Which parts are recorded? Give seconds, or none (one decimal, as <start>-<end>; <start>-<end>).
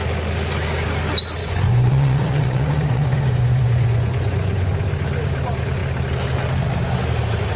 0.0-1.4; 4.7-7.6